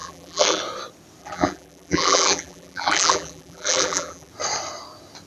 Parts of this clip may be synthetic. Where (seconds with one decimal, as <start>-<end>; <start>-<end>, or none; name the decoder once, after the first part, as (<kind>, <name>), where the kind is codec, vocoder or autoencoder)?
0.0-0.6 (vocoder, BigVGAN v2); 1.2-4.3

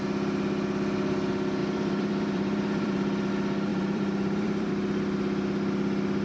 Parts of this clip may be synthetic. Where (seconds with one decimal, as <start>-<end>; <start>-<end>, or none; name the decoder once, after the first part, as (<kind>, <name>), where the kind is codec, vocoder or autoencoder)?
1.6-3.3 (vocoder, BigVGAN v2); 3.7-4.7